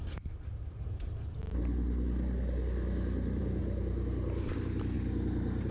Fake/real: real